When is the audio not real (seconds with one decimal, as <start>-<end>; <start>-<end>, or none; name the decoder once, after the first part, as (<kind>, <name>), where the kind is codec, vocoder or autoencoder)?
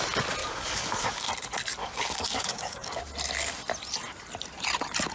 0.4-1.3 (codec, DAC); 1.8-3.0